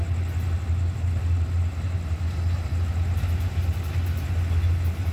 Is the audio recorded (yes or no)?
yes